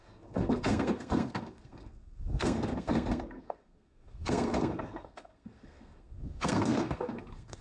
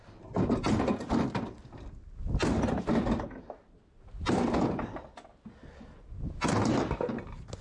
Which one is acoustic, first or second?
second